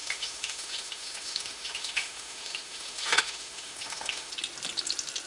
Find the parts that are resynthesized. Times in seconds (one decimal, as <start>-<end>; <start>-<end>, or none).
0.0-4.3